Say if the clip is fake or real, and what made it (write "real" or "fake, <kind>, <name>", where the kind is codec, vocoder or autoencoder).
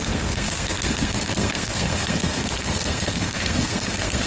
fake, codec, SNAC